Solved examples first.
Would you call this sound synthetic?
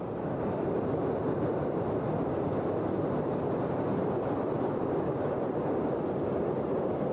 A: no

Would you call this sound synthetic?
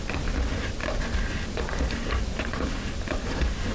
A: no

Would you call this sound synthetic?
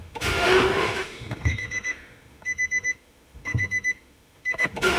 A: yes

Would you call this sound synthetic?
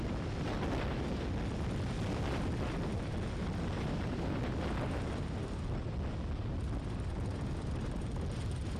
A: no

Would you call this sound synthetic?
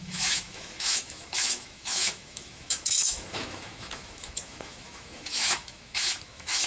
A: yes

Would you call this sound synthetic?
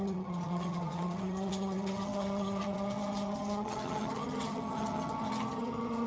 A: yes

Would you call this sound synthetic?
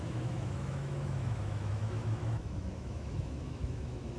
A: yes